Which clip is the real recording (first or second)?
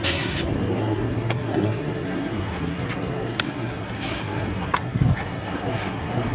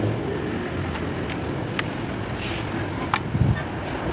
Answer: second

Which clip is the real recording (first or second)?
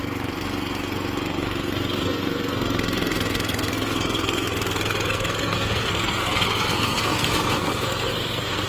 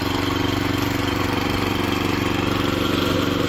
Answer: second